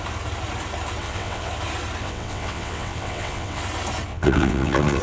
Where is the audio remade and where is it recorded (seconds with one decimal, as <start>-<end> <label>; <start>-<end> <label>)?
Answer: 0.0-1.0 recorded; 1.0-1.5 remade; 1.5-2.0 recorded; 2.0-3.6 remade; 3.6-4.1 recorded; 4.1-5.0 remade